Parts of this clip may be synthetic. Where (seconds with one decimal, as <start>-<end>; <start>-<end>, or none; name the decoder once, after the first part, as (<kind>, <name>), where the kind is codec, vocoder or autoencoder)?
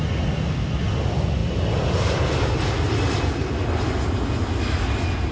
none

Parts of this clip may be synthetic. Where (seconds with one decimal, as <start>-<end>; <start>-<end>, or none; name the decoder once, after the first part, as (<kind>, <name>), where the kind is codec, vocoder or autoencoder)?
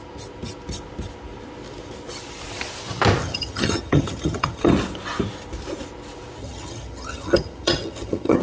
3.2-4.7 (vocoder, HiFi-GAN); 6.4-8.4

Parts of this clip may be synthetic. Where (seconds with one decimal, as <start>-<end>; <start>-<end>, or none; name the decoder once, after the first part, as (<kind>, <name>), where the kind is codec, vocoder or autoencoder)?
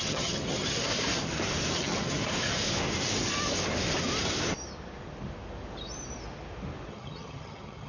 0.0-0.9 (vocoder, HiFi-GAN); 1.7-2.2; 6.9-7.9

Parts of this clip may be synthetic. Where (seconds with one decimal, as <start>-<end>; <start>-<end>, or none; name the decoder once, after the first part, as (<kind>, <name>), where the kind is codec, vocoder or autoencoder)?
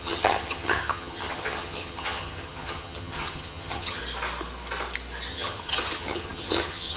0.0-4.0 (vocoder, HiFi-GAN); 5.3-7.0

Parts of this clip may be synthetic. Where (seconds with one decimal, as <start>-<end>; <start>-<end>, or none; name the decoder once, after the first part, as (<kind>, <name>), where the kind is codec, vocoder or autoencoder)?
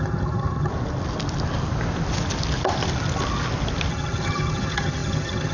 0.0-0.7 (vocoder, HiFi-GAN); 3.9-5.5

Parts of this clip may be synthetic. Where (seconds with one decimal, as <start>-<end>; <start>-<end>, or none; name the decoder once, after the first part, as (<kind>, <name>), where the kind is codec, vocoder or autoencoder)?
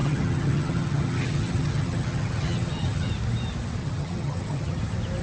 0.0-3.1 (vocoder, HiFi-GAN); 3.8-4.8